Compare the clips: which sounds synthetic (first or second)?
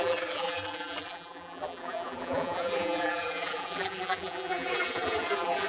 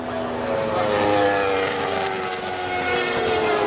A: first